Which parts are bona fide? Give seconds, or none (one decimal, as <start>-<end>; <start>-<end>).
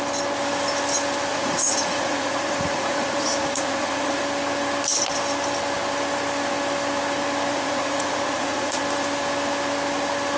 0.0-1.3; 4.2-7.5; 8.8-10.4